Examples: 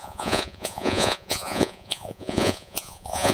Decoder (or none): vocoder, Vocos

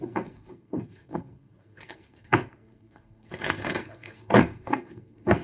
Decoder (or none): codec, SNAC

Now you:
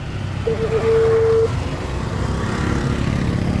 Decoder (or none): none